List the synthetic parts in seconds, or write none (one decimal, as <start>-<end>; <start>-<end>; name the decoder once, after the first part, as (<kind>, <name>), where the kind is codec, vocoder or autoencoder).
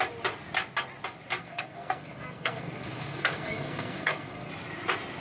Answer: 1.4-4.5 (codec, SNAC)